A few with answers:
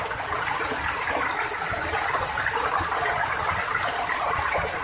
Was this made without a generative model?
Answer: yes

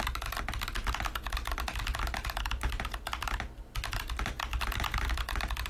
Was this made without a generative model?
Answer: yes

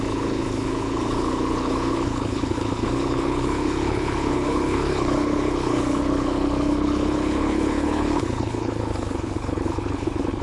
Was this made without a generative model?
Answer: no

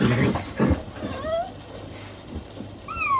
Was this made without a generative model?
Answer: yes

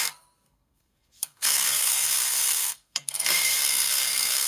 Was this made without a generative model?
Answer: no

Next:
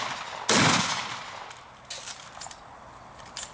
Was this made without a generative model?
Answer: yes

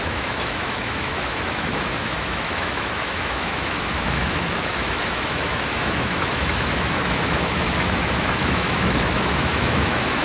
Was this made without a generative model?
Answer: no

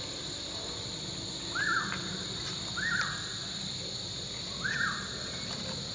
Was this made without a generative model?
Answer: yes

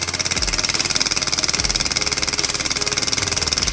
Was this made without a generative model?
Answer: yes